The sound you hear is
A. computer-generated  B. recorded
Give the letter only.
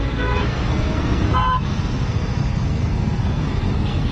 A